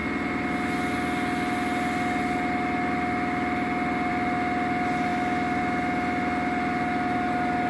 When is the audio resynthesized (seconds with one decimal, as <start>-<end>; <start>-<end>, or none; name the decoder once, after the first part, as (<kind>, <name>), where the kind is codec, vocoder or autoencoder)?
none